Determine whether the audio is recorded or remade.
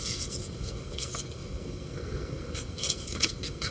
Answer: remade